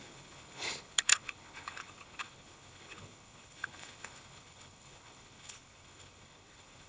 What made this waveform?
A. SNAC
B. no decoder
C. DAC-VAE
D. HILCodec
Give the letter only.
D